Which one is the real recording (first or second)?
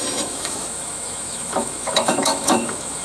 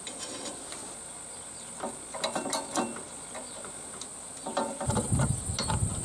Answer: second